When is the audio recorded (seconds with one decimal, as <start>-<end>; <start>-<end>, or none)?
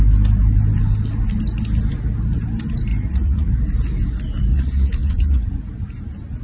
0.0-2.9; 3.5-4.5; 5.7-6.4